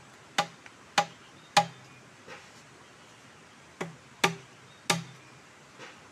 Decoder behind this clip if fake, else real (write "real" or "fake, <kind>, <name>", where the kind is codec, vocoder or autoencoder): real